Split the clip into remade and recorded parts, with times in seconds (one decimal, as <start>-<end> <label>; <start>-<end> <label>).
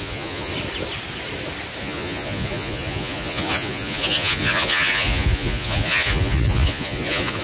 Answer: 0.0-0.5 remade; 0.5-1.8 recorded; 1.8-7.4 remade